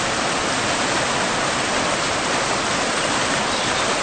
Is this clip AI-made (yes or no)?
no